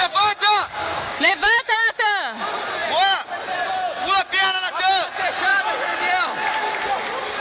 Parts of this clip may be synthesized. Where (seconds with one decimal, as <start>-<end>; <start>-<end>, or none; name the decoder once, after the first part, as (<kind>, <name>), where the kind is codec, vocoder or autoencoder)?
0.0-2.2 (codec, DAC)